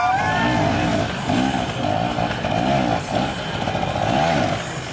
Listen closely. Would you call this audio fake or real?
real